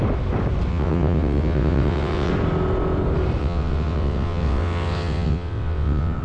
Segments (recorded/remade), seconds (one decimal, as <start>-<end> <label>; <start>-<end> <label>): 0.0-0.7 recorded; 0.7-2.3 remade; 2.3-3.4 recorded; 3.4-6.2 remade